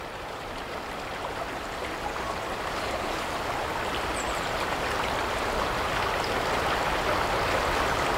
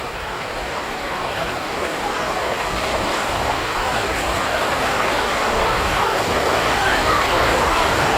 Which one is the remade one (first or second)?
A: second